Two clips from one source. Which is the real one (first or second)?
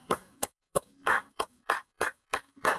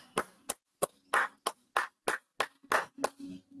second